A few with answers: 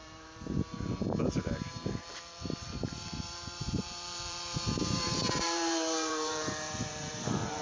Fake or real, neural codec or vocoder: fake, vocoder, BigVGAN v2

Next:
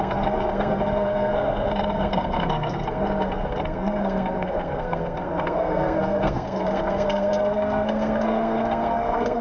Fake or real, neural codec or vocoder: fake, codec, SNAC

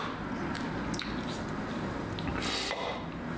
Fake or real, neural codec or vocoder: real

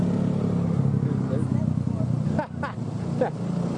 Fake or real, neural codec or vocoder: real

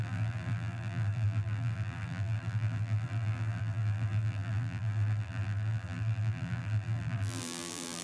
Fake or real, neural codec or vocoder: fake, vocoder, BigVGAN v2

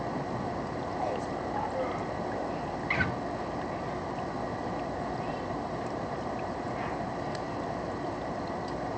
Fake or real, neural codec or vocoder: real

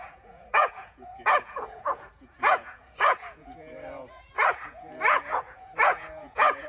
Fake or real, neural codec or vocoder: fake, vocoder, Vocos